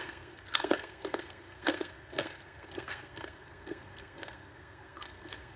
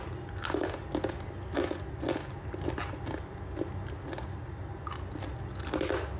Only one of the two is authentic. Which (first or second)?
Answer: second